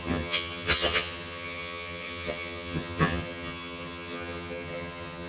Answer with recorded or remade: remade